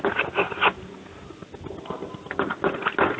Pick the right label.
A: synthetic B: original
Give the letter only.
B